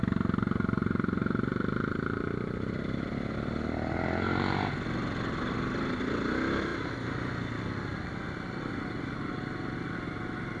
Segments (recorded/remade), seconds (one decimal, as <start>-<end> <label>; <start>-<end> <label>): 0.0-10.6 recorded